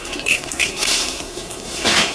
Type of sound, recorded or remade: remade